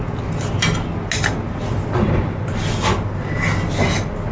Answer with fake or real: real